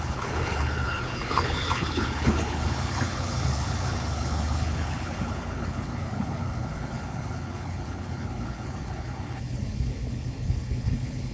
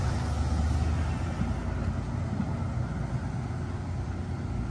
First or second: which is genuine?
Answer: second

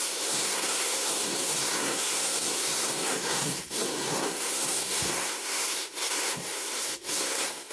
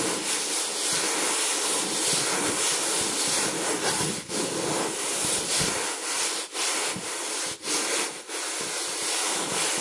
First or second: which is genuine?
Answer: second